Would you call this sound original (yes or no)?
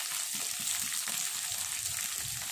yes